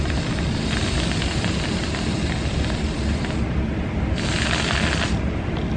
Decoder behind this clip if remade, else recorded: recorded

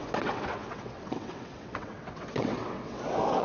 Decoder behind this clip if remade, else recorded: remade, vocoder, WaveNeXt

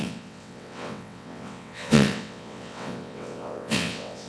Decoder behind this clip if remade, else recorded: remade, vocoder, WaveNeXt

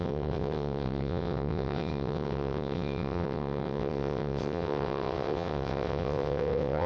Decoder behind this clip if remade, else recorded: remade, vocoder, WaveNeXt